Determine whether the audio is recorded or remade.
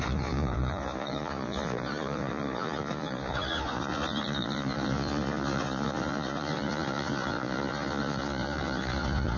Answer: remade